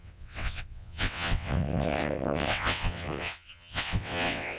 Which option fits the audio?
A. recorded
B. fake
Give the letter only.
B